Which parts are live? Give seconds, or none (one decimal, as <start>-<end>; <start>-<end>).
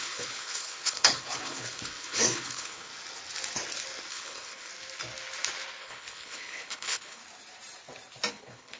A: 2.9-4.1; 4.7-5.8; 7.2-8.3